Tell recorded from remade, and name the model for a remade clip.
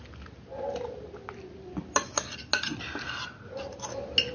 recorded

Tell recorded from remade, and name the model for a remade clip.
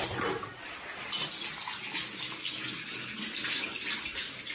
recorded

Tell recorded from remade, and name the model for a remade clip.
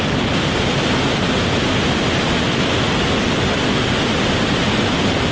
recorded